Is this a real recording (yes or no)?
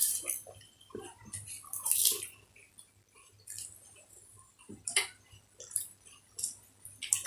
no